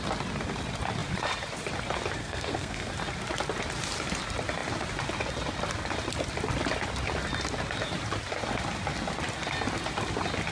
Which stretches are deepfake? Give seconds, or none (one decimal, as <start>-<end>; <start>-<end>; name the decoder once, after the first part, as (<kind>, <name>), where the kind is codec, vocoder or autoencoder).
2.2-2.9 (codec, SNAC)